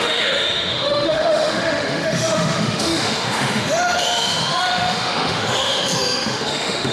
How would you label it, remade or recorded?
remade